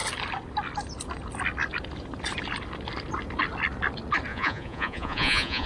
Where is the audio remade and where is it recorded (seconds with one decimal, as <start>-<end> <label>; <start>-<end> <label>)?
0.0-4.3 recorded; 4.3-5.7 remade